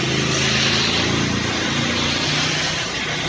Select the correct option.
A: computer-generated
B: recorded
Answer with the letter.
B